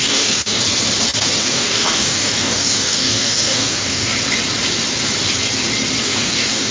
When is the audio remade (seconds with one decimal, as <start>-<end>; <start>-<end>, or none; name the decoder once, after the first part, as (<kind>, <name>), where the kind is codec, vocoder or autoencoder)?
0.0-0.6 (codec, DAC); 1.4-4.1; 6.0-6.7